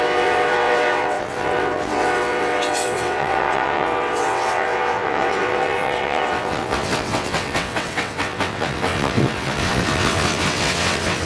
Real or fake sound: fake